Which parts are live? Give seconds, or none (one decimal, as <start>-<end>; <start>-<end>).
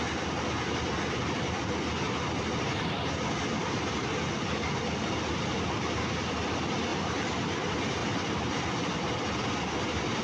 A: 0.0-10.2